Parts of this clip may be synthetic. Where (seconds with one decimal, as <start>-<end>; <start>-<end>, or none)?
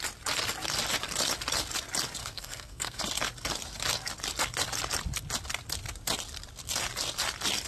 2.2-3.0